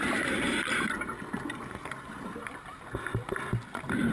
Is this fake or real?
real